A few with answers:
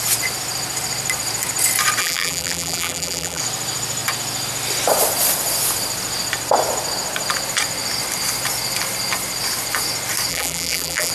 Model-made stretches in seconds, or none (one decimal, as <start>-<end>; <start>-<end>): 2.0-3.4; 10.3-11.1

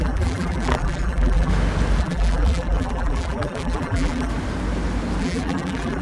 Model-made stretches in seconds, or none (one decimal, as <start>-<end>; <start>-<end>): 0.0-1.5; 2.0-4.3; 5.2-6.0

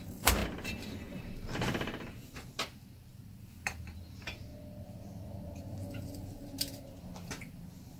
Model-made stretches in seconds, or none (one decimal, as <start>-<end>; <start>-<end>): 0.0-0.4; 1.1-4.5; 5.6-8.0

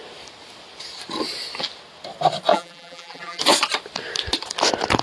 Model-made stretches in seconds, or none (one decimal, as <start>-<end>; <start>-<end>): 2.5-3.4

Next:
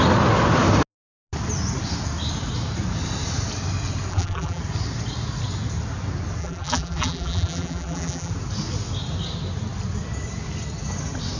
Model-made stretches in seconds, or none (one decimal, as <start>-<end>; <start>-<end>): 4.1-4.6; 6.4-8.3

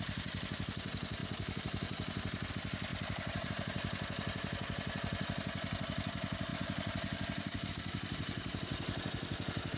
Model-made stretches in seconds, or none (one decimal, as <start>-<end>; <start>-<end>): 2.9-3.5

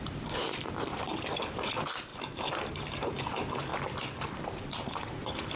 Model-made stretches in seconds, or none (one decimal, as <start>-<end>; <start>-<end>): 0.0-3.7; 4.4-5.6

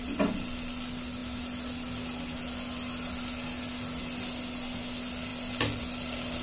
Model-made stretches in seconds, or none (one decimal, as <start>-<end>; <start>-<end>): none